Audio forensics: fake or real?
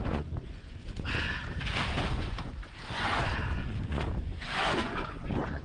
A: fake